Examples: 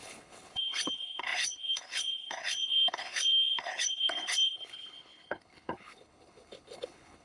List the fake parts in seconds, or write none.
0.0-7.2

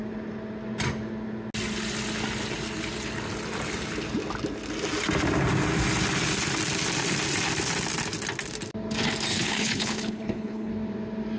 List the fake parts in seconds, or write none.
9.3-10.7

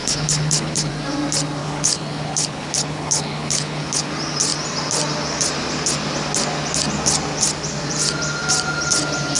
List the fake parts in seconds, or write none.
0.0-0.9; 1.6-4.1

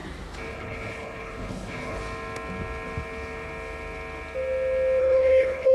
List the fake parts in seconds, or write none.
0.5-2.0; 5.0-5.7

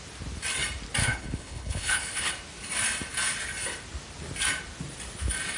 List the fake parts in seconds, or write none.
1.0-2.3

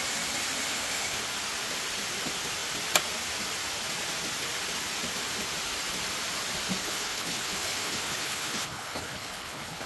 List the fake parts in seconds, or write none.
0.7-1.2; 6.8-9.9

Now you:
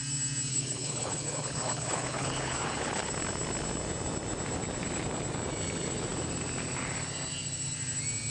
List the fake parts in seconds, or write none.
0.5-3.1

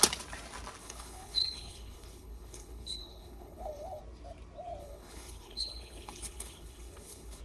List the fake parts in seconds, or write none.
0.8-4.0; 4.8-7.4